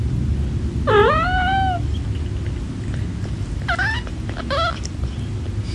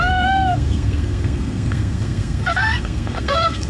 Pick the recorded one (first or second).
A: first